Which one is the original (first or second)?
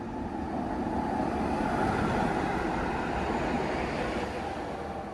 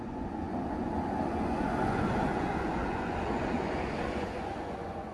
first